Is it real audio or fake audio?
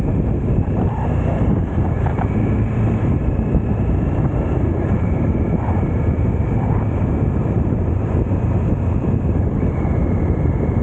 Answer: fake